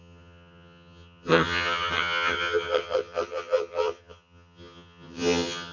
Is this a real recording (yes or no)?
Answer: no